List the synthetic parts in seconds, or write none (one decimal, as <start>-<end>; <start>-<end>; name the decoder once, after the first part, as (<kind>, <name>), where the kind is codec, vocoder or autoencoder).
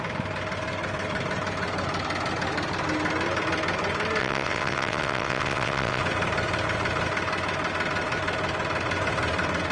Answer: 4.2-6.0 (vocoder, WaveNeXt)